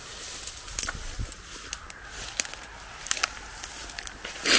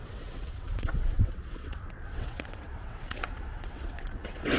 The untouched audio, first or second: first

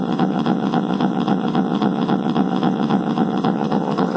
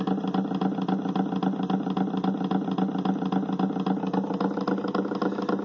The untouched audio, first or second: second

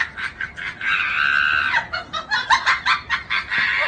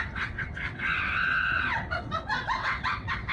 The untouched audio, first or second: first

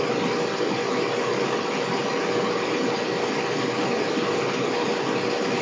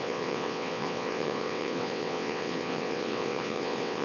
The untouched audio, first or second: first